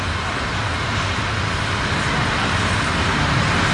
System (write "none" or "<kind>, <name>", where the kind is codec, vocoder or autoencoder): none